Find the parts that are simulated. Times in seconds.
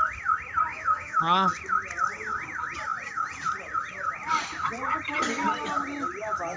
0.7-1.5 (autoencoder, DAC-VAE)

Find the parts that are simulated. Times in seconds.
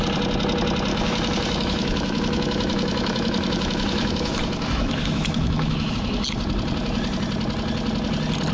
0.9-5.9 (autoencoder, DAC-VAE)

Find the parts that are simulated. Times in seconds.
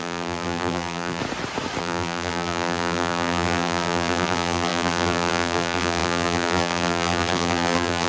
0.0-1.2 (vocoder, BigVGAN v2); 1.8-8.1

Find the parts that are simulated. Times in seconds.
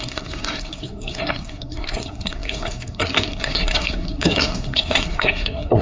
0.0-5.8 (codec, SNAC)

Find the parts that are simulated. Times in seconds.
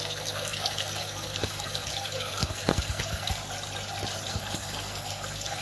0.0-3.4 (codec, SNAC); 4.3-5.6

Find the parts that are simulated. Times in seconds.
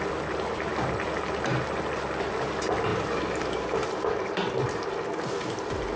2.9-4.8 (vocoder, BigVGAN v2)